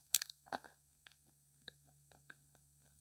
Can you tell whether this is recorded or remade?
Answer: remade